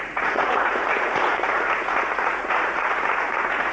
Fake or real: fake